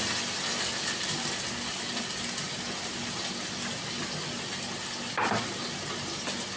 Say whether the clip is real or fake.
real